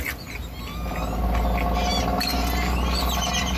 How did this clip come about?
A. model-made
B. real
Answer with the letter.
B